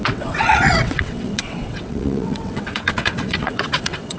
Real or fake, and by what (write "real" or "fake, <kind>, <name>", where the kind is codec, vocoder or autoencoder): fake, vocoder, WaveNeXt